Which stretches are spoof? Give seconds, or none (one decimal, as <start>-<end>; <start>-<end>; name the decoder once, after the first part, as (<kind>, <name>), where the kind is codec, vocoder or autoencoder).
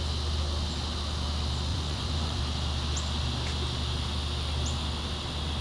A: 1.7-2.4 (vocoder, Vocos)